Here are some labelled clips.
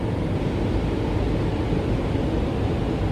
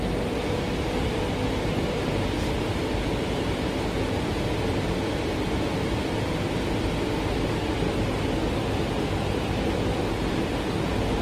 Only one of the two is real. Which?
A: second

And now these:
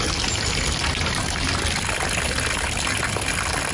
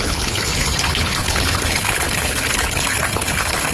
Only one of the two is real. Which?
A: first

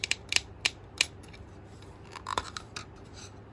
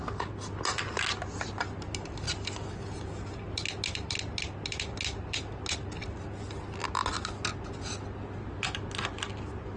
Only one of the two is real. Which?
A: second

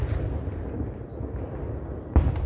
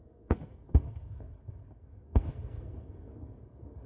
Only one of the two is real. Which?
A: first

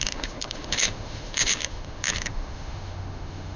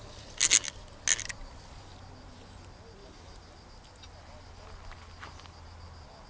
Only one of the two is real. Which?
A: second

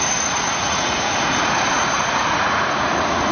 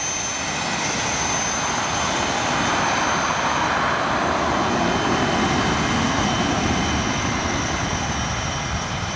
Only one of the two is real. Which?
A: second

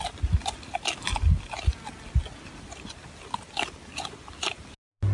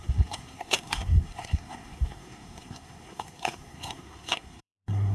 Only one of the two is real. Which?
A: first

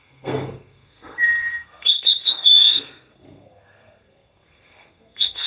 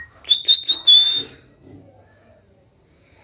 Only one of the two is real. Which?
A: second